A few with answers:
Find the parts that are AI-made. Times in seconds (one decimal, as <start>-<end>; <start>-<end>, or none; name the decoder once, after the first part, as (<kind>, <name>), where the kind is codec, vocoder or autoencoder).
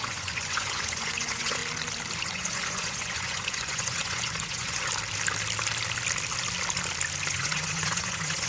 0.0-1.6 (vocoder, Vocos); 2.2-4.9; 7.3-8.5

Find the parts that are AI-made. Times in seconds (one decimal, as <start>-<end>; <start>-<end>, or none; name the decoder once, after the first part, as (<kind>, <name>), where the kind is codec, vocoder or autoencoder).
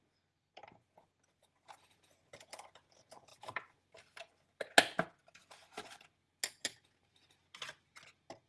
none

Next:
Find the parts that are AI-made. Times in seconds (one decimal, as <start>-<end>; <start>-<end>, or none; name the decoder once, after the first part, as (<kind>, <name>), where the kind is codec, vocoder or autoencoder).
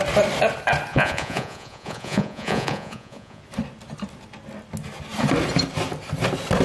0.9-3.4 (vocoder, Vocos)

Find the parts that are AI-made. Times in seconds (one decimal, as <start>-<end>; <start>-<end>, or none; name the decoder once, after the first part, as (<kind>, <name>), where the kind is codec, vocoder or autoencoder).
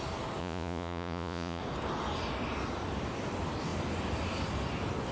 0.4-1.6 (vocoder, Vocos)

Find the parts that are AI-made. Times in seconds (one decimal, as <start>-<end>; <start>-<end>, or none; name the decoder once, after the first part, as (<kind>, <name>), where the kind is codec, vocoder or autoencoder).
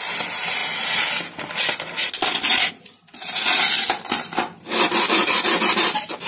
none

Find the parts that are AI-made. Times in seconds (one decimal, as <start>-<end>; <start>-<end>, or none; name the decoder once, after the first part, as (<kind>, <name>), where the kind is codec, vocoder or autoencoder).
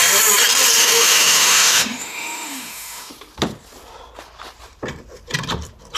0.8-3.1 (autoencoder, DAC-VAE)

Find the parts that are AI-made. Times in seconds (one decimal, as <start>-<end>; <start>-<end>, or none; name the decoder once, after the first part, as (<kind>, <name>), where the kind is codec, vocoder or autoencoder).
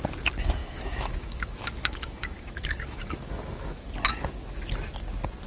0.6-3.9 (autoencoder, DAC-VAE)